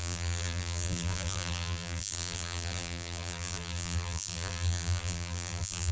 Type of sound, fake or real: fake